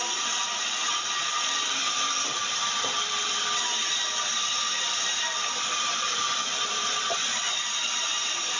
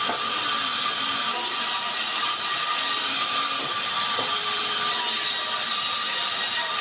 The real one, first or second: second